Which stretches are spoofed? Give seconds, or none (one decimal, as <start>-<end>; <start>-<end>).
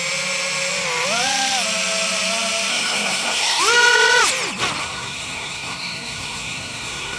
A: 2.7-3.6; 4.8-7.2